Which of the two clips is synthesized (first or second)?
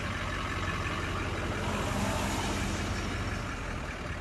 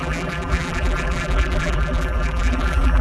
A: second